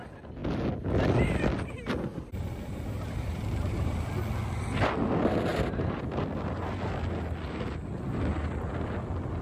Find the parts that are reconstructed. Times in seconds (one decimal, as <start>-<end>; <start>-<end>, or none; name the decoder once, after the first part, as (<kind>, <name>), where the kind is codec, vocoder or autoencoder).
2.1-4.1 (vocoder, BigVGAN v2); 5.5-6.0